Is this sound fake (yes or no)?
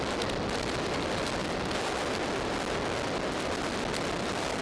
no